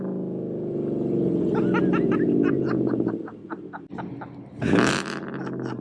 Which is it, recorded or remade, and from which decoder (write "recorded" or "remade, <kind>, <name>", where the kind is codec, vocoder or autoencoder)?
recorded